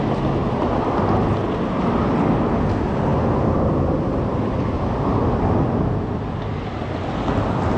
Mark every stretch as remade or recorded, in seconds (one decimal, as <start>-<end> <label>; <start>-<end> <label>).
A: 0.0-7.8 recorded